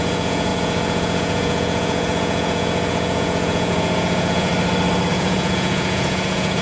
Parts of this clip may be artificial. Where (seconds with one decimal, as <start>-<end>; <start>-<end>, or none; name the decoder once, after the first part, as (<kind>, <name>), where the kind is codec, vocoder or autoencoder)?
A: 0.0-4.5 (vocoder, Vocos); 5.1-6.6